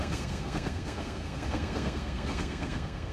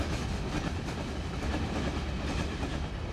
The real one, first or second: second